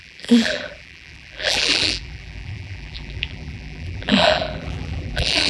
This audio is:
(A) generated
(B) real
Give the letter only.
A